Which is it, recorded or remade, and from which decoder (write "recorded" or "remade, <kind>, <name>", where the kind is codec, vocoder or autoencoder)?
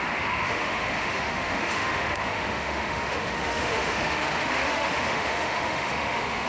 remade, autoencoder, DAC-VAE